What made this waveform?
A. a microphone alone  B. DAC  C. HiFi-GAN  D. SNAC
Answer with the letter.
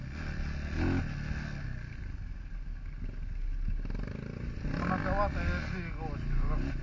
A